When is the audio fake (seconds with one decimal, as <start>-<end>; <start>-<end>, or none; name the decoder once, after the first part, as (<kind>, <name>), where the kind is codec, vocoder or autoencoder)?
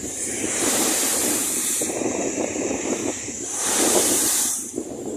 0.0-5.2 (vocoder, BigVGAN v2)